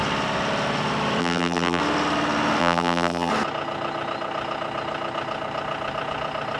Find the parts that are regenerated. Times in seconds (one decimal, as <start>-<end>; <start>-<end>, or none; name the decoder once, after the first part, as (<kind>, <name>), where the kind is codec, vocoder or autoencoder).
1.2-1.8 (vocoder, BigVGAN v2); 2.6-3.3